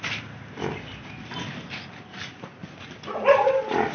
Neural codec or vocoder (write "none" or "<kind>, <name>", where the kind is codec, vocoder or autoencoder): none